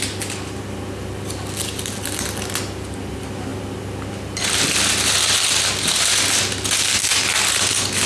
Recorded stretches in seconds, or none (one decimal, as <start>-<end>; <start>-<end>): 0.0-8.1